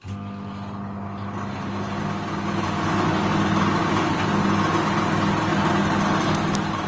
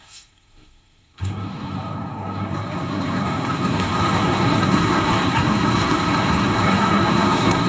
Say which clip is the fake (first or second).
second